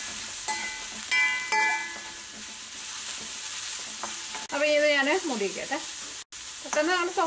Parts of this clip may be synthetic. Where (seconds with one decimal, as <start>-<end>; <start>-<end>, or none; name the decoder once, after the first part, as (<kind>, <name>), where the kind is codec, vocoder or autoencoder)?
none